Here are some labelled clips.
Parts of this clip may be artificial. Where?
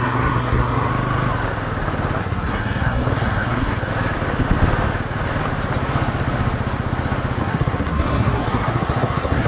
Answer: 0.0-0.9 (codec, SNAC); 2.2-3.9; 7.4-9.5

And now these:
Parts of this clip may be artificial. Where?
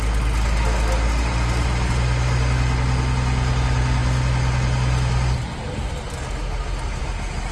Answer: none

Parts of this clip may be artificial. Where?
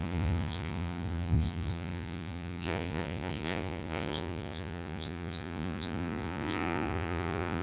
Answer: 0.0-7.6 (vocoder, Vocos)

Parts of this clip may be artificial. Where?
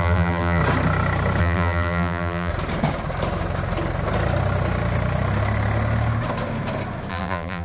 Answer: 0.0-0.6 (vocoder, BigVGAN v2); 1.4-2.5; 7.1-7.6